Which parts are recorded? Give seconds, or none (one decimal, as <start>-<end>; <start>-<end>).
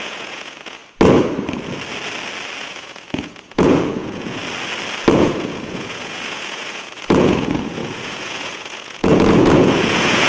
0.8-2.6; 4.4-5.1